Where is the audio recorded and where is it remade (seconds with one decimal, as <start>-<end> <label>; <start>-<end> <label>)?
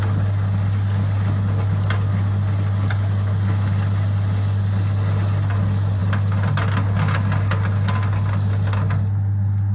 0.0-9.7 recorded